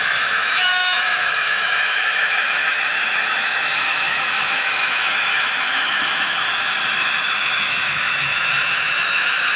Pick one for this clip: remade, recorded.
remade